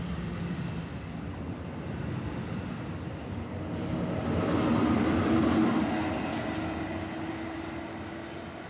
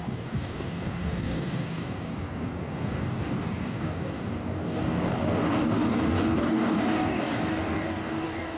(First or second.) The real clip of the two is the first